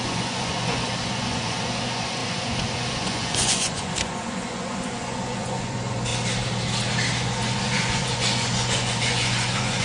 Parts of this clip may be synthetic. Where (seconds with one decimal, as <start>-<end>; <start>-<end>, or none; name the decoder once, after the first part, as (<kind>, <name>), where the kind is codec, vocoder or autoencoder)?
0.0-6.1 (vocoder, Vocos); 7.2-9.8